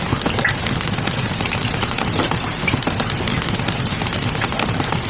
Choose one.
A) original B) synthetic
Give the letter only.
A